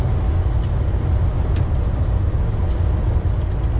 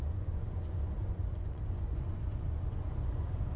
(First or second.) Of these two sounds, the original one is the first